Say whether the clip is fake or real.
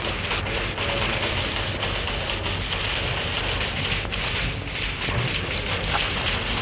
real